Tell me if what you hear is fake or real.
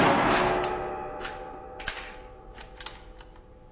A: real